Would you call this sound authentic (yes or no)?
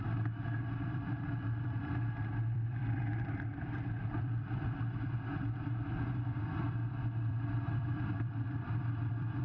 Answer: no